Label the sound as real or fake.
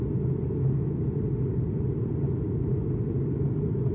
real